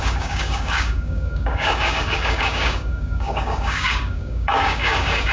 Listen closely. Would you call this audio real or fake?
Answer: fake